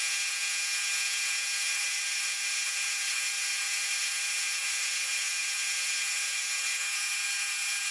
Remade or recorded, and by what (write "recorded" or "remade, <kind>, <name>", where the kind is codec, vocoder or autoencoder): remade, vocoder, Vocos